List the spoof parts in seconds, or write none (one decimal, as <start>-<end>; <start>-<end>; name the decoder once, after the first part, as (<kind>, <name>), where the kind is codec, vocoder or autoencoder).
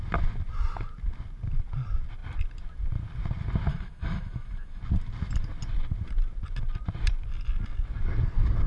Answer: 3.7-4.8 (autoencoder, DAC-VAE)